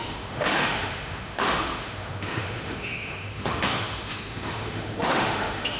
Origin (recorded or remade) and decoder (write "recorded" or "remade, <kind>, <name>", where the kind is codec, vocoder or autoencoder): remade, autoencoder, DAC-VAE